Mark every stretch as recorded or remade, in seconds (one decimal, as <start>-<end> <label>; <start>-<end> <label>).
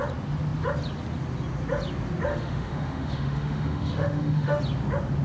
0.0-2.3 recorded; 2.3-4.6 remade; 4.6-5.2 recorded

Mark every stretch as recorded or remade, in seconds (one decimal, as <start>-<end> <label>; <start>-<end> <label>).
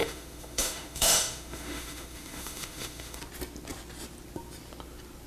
0.0-3.2 remade; 3.2-5.3 recorded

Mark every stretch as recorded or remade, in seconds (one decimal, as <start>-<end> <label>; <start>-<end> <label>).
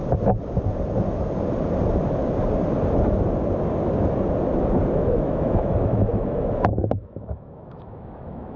0.0-4.9 recorded; 4.9-8.6 remade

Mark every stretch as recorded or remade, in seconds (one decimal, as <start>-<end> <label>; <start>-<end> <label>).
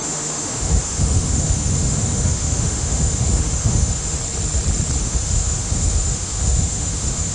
0.0-4.2 remade; 4.2-5.0 recorded; 5.0-7.3 remade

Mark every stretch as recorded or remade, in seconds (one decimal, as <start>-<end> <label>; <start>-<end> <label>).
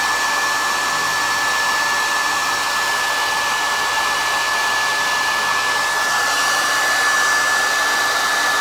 0.0-8.6 recorded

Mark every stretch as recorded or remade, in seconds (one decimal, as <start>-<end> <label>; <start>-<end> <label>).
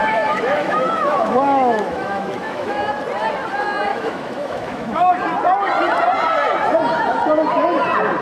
0.0-2.8 remade; 2.8-3.9 recorded; 3.9-5.1 remade; 5.1-8.2 recorded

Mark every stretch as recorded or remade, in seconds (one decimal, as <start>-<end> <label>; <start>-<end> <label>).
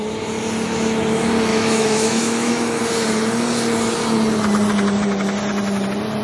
0.0-1.5 recorded; 1.5-2.8 remade; 2.8-6.2 recorded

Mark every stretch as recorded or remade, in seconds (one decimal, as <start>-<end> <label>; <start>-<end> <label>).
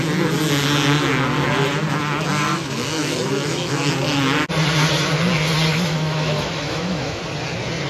0.0-2.5 recorded; 2.5-3.9 remade; 3.9-5.7 recorded; 5.7-7.2 remade; 7.2-7.9 recorded